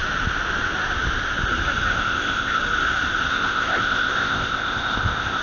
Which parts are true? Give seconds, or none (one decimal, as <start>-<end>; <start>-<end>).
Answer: 0.0-1.9; 2.6-3.3